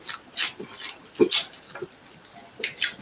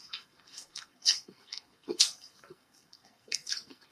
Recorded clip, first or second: first